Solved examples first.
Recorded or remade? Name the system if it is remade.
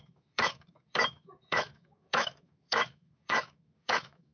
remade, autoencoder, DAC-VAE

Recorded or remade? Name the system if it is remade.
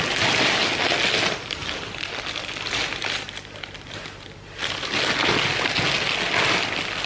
recorded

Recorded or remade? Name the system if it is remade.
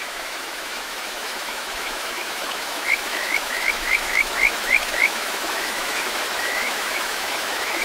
remade, autoencoder, DAC-VAE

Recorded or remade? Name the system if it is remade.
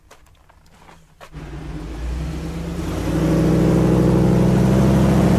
recorded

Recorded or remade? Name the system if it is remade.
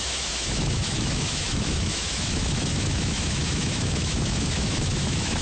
remade, autoencoder, DAC-VAE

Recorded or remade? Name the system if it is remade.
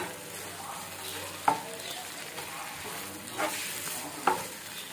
recorded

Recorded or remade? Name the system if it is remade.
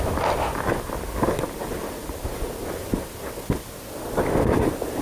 recorded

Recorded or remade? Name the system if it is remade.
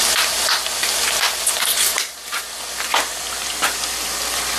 recorded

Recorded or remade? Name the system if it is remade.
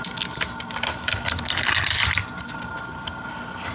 recorded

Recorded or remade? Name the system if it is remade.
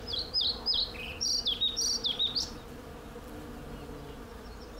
recorded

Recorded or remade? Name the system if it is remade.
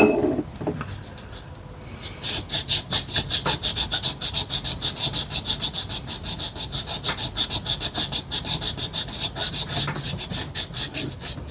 recorded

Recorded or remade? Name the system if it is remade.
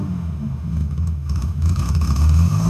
remade, autoencoder, DAC-VAE